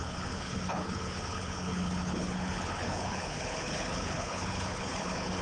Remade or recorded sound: remade